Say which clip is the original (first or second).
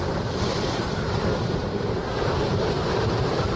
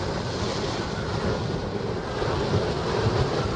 second